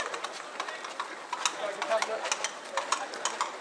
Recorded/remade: recorded